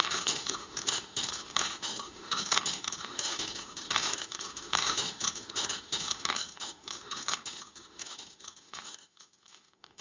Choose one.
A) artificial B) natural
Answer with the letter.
A